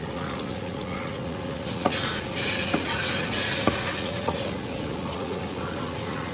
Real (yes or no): no